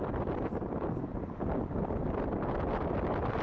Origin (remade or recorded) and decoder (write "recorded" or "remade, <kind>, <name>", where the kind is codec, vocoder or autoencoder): recorded